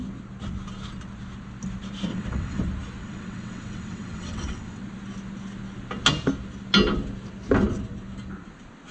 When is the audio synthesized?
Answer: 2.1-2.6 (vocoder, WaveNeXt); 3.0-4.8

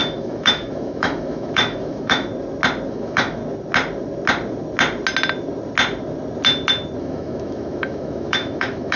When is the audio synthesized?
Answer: 0.0-2.3 (autoencoder, DAC-VAE); 2.9-3.4; 7.0-9.0

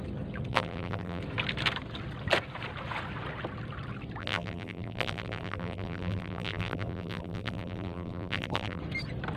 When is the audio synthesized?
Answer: 0.5-1.2 (vocoder, BigVGAN v2); 4.2-8.8